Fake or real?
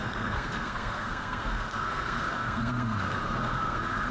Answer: fake